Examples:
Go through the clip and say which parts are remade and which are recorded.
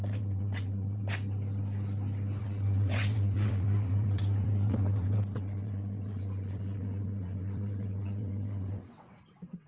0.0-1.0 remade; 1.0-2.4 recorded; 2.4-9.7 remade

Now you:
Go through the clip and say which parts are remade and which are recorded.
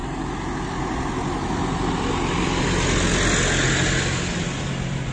0.0-5.1 recorded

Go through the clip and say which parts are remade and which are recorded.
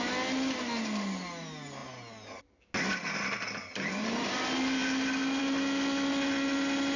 0.0-7.0 recorded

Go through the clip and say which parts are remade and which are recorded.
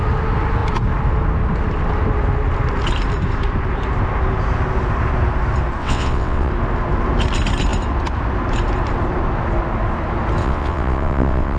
0.0-5.8 recorded; 5.8-6.5 remade; 6.5-10.4 recorded; 10.4-11.6 remade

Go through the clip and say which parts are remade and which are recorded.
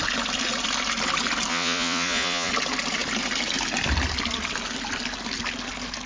0.0-1.5 recorded; 1.5-2.5 remade; 2.5-6.1 recorded